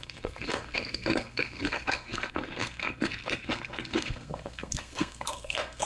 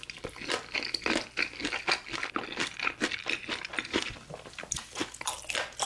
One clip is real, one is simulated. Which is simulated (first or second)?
first